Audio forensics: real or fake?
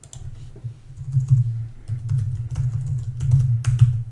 real